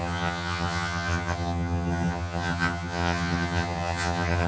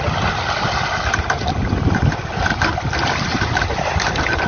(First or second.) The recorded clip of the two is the second